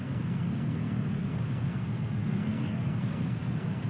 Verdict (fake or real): fake